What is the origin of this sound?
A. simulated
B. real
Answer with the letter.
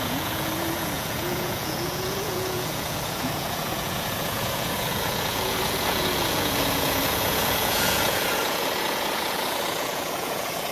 A